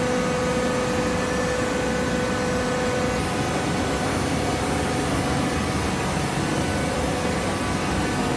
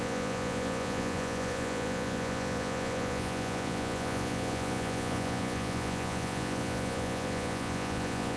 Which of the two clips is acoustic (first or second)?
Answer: first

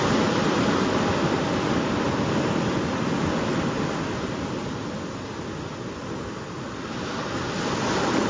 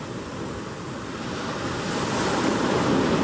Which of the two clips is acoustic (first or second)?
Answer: first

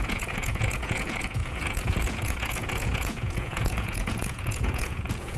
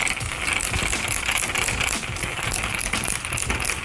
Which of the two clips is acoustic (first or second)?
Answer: second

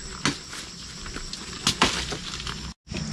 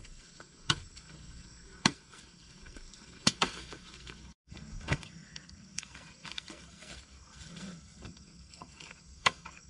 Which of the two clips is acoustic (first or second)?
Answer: first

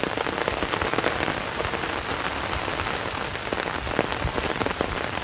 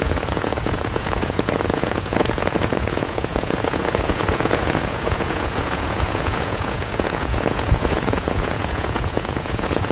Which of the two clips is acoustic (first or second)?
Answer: first